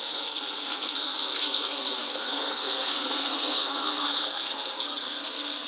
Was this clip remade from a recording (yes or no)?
yes